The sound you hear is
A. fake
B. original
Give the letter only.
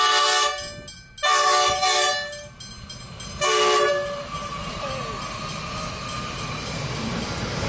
B